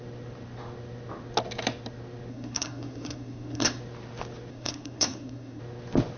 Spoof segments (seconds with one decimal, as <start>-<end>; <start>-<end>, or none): 2.3-3.8; 4.5-5.6